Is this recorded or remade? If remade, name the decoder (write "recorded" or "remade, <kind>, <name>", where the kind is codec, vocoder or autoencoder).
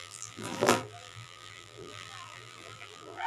remade, vocoder, BigVGAN v2